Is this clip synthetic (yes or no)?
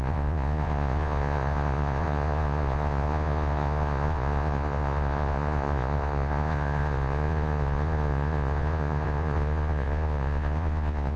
yes